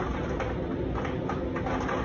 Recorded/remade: recorded